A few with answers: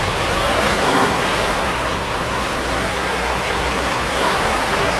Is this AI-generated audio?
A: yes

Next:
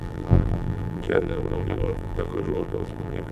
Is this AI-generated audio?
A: yes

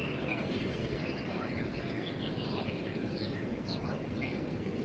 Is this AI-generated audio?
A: yes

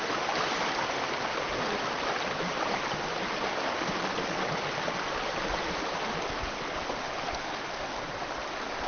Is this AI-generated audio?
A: no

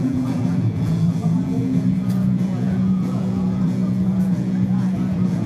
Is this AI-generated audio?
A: yes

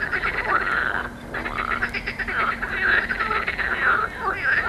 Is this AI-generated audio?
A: no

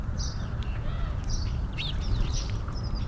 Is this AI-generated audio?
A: yes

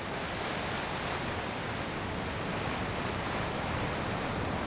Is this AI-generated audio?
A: no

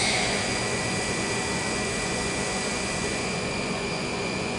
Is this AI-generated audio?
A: yes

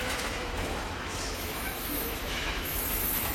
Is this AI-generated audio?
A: yes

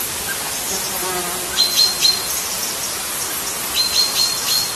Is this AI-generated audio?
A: no